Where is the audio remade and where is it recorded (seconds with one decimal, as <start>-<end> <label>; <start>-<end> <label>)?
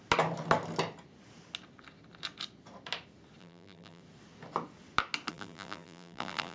0.0-3.4 recorded; 3.4-4.0 remade; 4.0-5.3 recorded; 5.3-6.5 remade